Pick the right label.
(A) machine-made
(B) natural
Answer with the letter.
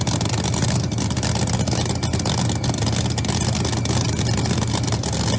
B